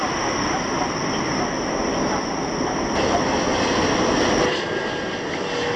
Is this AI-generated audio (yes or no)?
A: no